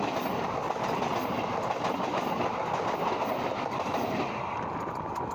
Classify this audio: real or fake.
real